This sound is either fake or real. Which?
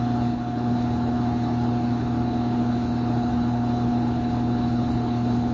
fake